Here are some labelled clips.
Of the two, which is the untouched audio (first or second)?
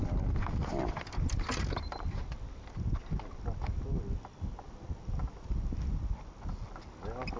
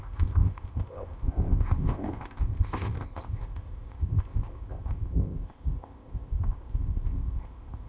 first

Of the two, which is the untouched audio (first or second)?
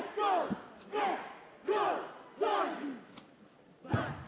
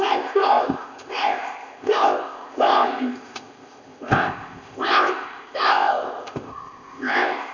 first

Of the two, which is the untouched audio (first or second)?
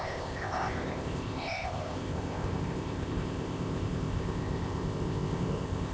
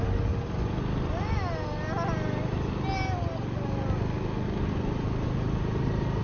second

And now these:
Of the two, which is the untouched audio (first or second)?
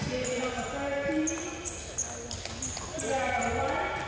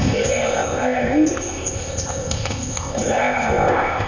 first